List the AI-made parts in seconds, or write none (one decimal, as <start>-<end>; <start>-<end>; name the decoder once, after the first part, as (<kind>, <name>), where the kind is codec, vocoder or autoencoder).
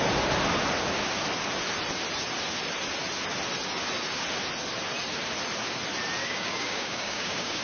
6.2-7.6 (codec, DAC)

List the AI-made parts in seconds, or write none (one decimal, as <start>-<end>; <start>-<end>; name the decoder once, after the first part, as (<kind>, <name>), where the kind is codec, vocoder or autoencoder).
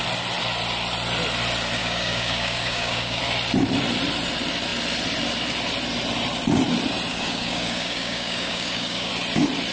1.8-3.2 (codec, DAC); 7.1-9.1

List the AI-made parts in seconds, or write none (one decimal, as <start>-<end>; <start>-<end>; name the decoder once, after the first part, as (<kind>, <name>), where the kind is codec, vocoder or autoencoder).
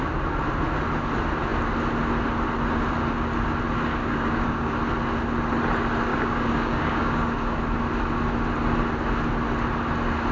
4.0-4.7 (codec, DAC); 6.1-7.6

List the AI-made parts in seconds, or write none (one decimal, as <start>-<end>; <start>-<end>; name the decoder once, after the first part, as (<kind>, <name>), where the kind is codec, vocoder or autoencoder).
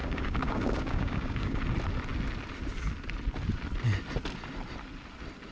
0.0-1.6 (codec, DAC)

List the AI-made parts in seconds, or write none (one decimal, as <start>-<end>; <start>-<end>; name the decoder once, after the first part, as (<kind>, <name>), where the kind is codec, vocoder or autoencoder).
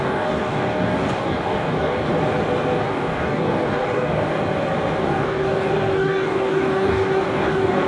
0.0-2.1 (codec, DAC); 2.8-4.4; 5.0-7.9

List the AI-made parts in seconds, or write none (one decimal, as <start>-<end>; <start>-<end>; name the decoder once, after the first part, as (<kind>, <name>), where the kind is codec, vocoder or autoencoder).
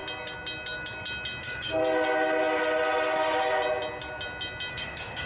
1.4-1.8 (codec, DAC); 4.7-5.3